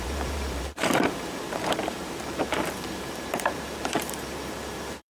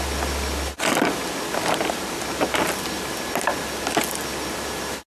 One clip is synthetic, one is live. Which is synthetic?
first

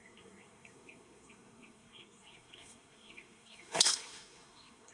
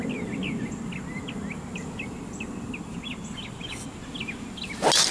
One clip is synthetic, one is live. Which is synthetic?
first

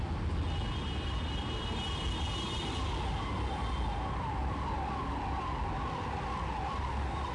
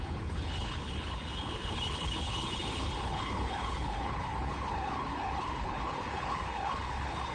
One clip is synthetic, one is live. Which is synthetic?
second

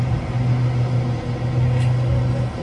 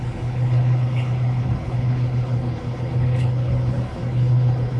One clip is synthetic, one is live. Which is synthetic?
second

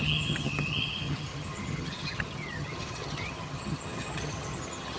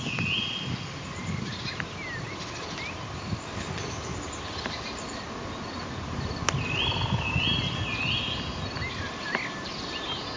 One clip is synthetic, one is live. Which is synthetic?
first